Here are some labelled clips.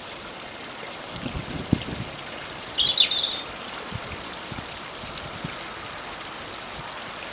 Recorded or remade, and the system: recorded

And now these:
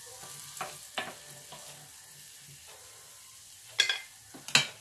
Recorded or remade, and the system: recorded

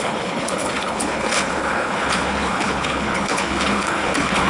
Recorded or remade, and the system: remade, codec, HILCodec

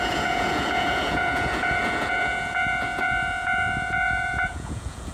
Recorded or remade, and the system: remade, vocoder, Vocos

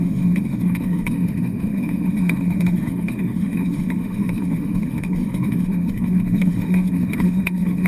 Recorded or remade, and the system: remade, autoencoder, DAC-VAE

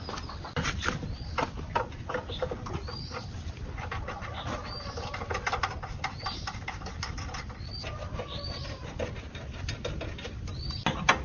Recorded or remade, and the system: recorded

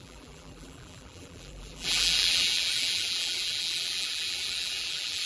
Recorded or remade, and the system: remade, vocoder, BigVGAN v2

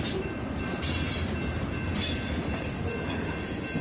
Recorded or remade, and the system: recorded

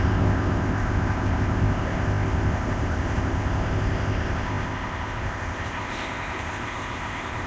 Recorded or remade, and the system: remade, codec, ZipCodec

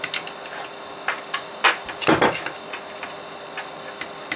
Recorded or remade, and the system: recorded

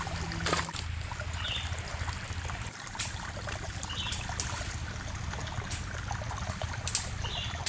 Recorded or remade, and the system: recorded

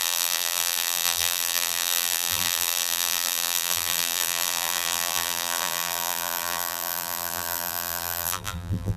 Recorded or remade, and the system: remade, vocoder, BigVGAN v2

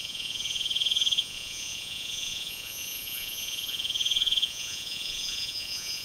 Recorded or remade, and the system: remade, vocoder, Vocos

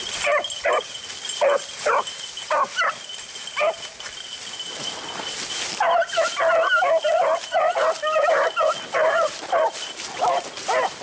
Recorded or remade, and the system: recorded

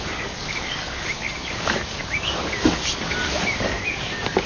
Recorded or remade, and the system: remade, codec, DAC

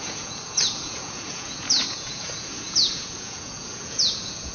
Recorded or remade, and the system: remade, vocoder, Vocos